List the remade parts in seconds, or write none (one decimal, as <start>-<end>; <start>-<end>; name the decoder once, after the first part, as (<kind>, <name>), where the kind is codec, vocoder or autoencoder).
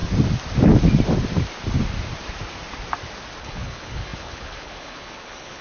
3.4-5.6 (codec, HILCodec)